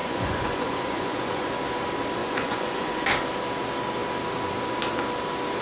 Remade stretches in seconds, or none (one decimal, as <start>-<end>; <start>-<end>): 0.0-1.5; 2.2-3.0